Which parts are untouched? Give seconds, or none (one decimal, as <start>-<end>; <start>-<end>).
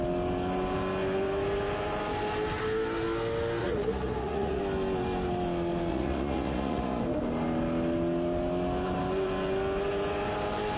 0.0-3.6; 4.6-5.9; 7.0-10.8